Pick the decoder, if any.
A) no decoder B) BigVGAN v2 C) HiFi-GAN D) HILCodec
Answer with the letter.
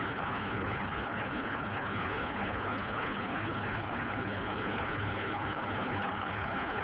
D